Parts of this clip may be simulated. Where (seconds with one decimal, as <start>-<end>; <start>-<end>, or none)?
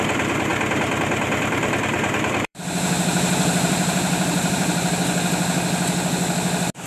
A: 1.6-4.9